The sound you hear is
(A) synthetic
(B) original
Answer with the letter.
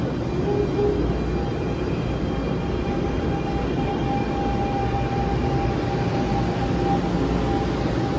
B